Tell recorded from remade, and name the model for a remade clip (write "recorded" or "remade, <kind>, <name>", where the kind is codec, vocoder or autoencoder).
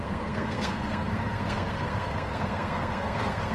remade, codec, SNAC